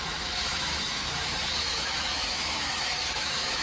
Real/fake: fake